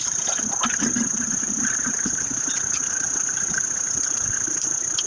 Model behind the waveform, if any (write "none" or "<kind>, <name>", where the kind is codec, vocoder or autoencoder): none